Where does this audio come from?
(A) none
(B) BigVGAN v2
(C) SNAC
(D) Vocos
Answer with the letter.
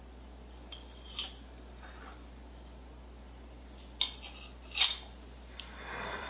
B